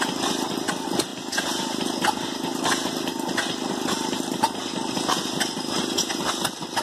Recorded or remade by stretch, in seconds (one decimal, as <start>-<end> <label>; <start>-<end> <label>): 0.0-6.8 recorded